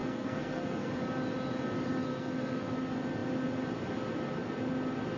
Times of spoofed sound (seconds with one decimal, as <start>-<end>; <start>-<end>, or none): 0.0-0.9; 2.1-2.7